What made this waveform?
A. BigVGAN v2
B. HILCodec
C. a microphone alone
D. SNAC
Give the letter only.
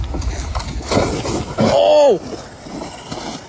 C